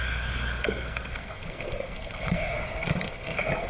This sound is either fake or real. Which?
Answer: fake